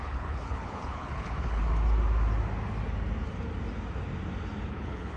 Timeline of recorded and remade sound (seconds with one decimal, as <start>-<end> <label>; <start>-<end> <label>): 0.0-1.6 remade; 1.6-4.7 recorded; 4.7-5.2 remade